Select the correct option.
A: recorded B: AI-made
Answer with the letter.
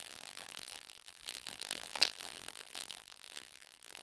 B